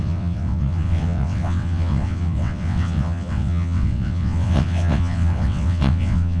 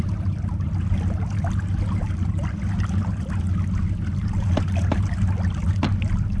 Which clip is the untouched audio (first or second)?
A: second